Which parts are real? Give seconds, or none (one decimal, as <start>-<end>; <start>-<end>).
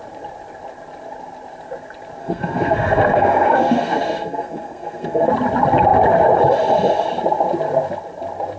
0.0-2.2; 5.3-8.6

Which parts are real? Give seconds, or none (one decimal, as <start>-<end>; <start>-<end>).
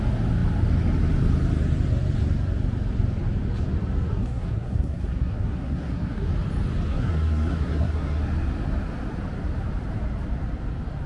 0.0-4.1; 6.3-6.9; 8.2-11.1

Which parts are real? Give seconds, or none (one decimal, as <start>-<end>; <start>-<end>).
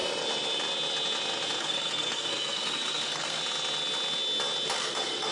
0.0-1.6; 3.4-4.8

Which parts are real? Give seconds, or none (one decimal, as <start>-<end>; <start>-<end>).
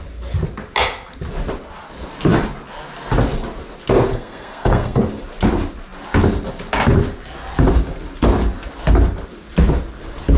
0.0-4.1; 5.0-10.4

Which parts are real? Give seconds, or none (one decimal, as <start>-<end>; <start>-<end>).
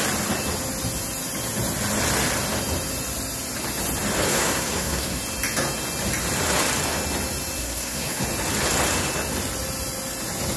0.0-4.3; 5.2-7.6; 8.2-10.6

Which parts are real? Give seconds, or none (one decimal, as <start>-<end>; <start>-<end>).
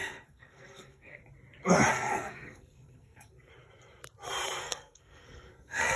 1.2-1.9; 3.5-4.6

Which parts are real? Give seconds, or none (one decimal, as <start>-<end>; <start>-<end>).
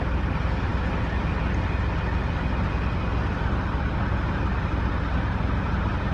0.0-6.1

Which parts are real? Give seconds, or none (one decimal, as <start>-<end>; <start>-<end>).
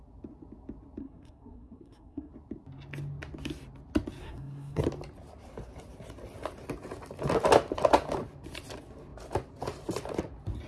0.0-1.0; 2.3-4.2; 4.8-10.7